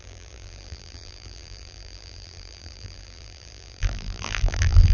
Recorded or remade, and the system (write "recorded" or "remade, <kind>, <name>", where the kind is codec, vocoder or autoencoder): remade, vocoder, BigVGAN v2